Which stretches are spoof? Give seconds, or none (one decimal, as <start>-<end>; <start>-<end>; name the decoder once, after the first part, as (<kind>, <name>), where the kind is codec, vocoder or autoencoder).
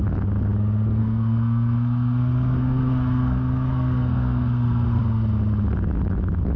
1.0-5.0 (codec, SNAC)